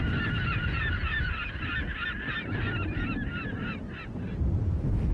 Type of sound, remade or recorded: recorded